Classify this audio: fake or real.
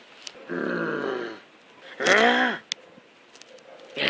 real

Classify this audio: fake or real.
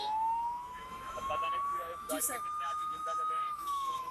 fake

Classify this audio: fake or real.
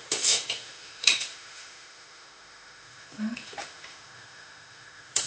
fake